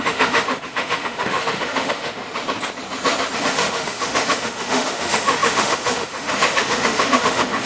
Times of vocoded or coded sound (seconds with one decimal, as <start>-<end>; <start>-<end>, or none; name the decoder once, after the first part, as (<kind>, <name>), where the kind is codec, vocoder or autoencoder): 0.0-2.2 (autoencoder, DAC-VAE); 3.4-7.7